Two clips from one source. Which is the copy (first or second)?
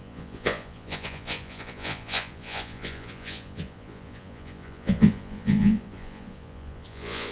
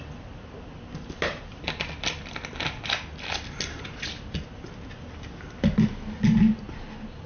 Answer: first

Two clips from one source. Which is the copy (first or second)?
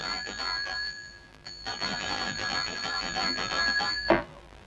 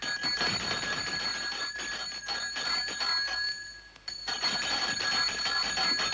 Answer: first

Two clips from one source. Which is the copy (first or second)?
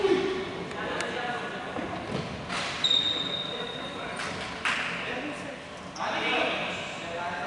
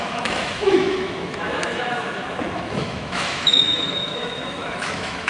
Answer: second